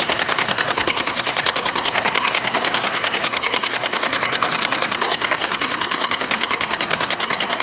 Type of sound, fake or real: fake